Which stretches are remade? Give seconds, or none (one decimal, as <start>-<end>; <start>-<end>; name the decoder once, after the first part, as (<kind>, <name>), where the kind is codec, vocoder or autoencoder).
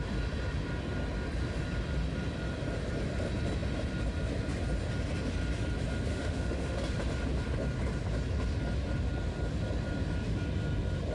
6.1-6.8 (autoencoder, DAC-VAE)